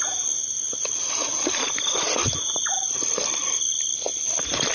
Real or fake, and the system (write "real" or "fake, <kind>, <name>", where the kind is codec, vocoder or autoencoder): real